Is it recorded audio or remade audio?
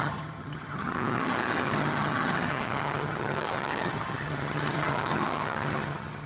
remade